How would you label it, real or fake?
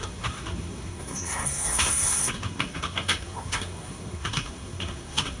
fake